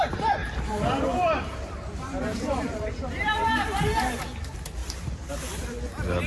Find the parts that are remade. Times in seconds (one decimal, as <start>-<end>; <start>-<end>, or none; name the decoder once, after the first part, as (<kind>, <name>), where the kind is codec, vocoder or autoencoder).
0.4-4.2 (vocoder, BigVGAN v2); 4.8-5.3